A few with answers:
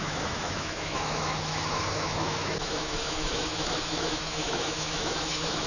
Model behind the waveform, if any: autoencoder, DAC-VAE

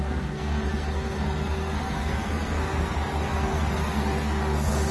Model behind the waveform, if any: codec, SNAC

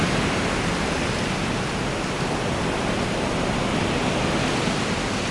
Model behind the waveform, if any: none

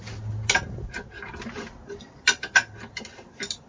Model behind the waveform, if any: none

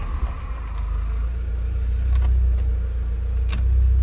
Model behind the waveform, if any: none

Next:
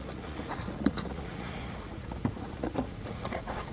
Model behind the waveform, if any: vocoder, Vocos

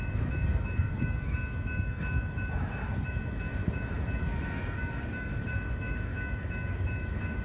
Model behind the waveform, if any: autoencoder, DAC-VAE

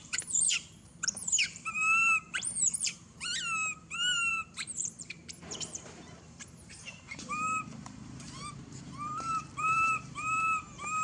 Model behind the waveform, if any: vocoder, BigVGAN v2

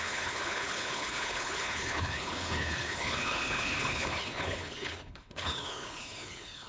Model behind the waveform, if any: codec, HILCodec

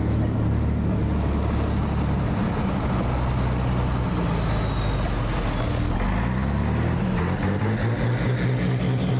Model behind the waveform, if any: none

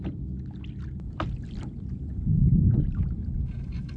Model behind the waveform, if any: none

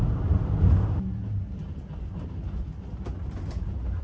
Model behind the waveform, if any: none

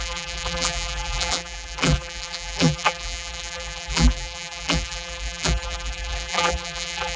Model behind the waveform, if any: vocoder, BigVGAN v2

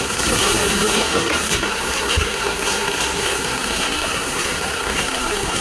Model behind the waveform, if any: codec, SNAC